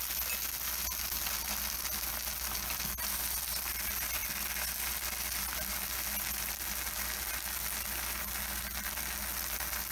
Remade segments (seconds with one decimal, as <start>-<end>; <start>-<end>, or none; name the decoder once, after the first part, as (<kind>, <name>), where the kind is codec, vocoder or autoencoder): none